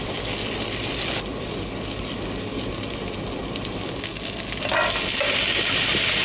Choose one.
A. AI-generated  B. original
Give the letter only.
B